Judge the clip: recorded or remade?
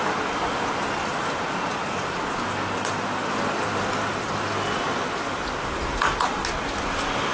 recorded